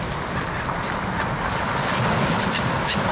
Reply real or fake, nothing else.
real